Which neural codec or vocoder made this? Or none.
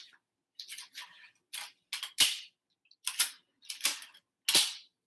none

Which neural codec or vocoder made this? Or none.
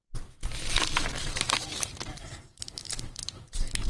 vocoder, BigVGAN v2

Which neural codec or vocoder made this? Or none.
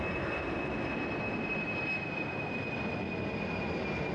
none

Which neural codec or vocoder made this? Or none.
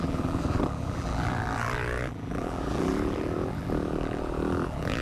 vocoder, BigVGAN v2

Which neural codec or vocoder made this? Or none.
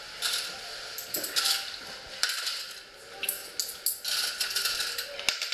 none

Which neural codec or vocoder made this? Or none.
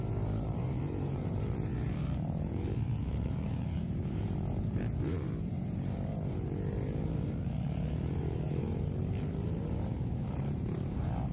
vocoder, BigVGAN v2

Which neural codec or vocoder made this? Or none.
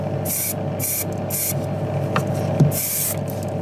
none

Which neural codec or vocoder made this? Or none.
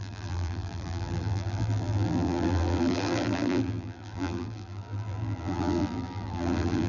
vocoder, BigVGAN v2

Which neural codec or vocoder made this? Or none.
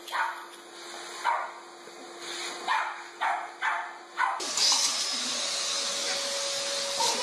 none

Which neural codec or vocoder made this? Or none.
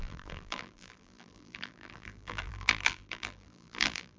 vocoder, BigVGAN v2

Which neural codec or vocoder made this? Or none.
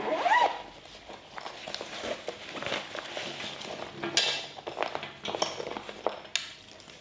none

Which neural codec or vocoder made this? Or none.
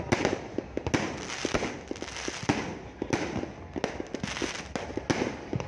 none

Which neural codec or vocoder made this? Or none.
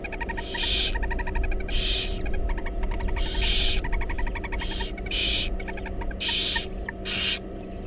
none